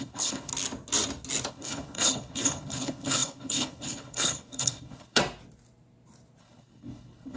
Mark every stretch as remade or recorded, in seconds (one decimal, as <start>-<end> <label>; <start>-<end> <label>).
0.0-0.5 remade; 0.5-1.5 recorded; 1.5-5.2 remade; 5.2-6.4 recorded; 6.4-7.4 remade